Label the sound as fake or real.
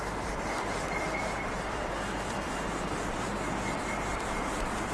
fake